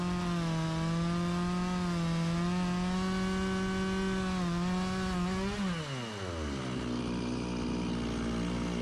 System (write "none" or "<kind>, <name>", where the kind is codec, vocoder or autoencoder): none